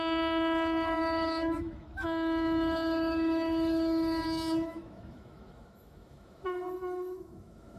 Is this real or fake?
fake